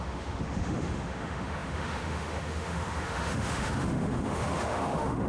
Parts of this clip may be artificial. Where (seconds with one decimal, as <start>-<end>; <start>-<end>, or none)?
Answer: 0.0-5.3